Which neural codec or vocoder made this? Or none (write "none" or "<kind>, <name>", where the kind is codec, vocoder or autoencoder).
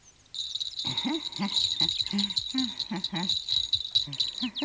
none